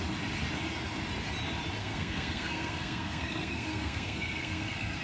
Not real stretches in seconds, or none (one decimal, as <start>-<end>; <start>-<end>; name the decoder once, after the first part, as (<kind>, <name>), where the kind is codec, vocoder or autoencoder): 1.8-5.0 (codec, SNAC)